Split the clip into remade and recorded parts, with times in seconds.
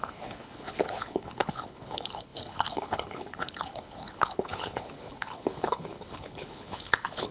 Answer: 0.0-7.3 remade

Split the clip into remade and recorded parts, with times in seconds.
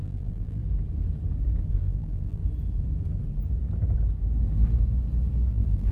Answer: 0.0-0.6 remade; 0.6-1.7 recorded; 1.7-2.4 remade; 2.4-5.5 recorded; 5.5-5.9 remade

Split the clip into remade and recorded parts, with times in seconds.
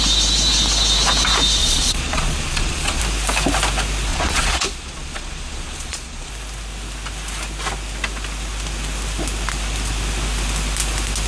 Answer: 0.0-1.6 recorded; 1.6-3.0 remade; 3.0-4.1 recorded; 4.1-6.3 remade; 6.3-11.3 recorded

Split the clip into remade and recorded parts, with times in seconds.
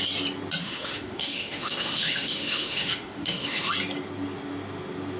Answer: 0.0-0.6 recorded; 0.6-3.7 remade; 3.7-5.2 recorded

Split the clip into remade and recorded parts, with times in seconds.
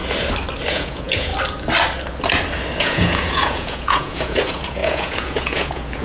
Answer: 0.0-0.7 recorded; 0.7-1.3 remade; 1.3-2.8 recorded; 2.8-6.0 remade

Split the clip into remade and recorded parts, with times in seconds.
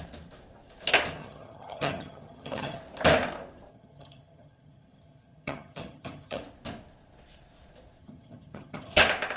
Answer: 0.0-1.2 recorded; 1.2-2.8 remade; 2.8-3.7 recorded; 3.7-6.4 remade; 6.4-8.0 recorded; 8.0-9.0 remade; 9.0-9.4 recorded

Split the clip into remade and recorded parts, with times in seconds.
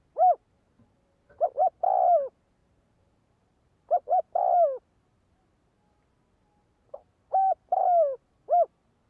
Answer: 0.0-2.6 recorded; 2.6-4.4 remade; 4.4-6.6 recorded; 6.6-7.8 remade; 7.8-9.1 recorded